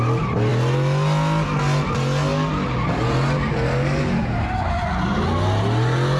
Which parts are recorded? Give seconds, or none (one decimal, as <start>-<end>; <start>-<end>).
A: 0.0-6.2